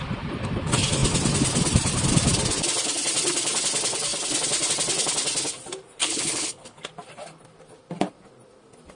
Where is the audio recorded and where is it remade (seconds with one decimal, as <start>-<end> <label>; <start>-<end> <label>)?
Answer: 0.0-6.0 recorded; 6.0-6.8 remade; 6.8-8.9 recorded